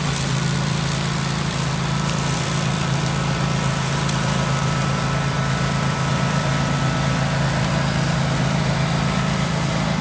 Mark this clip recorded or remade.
remade